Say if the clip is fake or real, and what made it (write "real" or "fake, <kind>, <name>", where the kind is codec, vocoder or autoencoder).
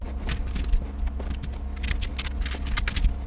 real